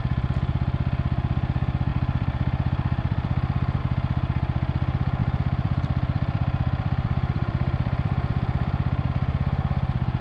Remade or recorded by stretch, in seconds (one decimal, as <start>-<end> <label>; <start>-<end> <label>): 0.0-1.9 recorded; 1.9-3.8 remade; 3.8-5.2 recorded; 5.2-9.1 remade; 9.1-10.2 recorded